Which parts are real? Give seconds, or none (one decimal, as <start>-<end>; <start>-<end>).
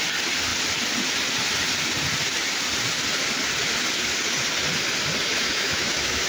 0.0-5.3